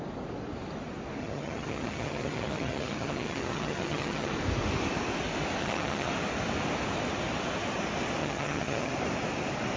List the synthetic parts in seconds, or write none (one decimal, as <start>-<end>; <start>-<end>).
1.2-4.3; 5.6-6.1; 8.2-8.9